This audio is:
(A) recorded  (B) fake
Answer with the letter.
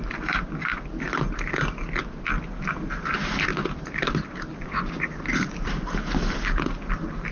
A